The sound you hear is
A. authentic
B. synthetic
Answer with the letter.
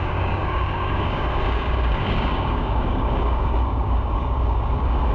B